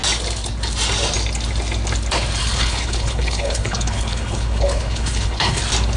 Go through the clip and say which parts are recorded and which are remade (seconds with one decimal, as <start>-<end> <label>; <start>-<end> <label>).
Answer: 0.0-2.4 recorded; 2.4-5.6 remade; 5.6-6.0 recorded